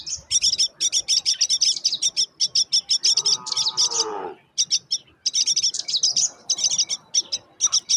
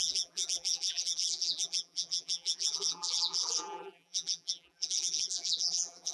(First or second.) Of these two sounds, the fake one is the second